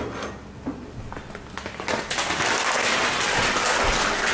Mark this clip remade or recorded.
recorded